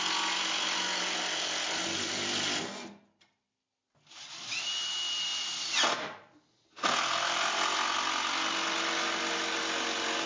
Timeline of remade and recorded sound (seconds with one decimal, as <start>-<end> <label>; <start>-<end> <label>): 0.0-10.3 recorded